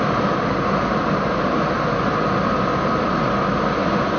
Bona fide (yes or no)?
yes